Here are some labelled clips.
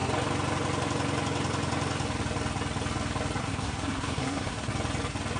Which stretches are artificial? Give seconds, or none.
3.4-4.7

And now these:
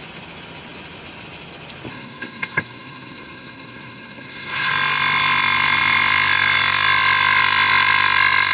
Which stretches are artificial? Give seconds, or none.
1.9-4.7

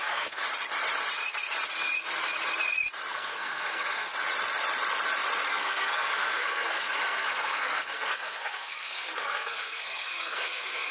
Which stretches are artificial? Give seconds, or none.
0.0-0.4; 3.1-4.1; 5.5-10.9

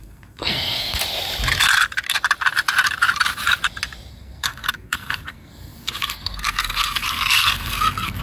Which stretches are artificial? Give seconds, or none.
0.0-1.0; 4.1-8.2

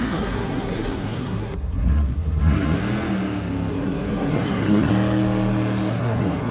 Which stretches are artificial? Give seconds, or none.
0.0-2.8; 3.7-4.9; 5.9-6.5

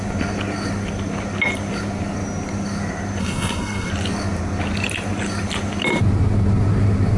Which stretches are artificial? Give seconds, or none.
3.2-3.9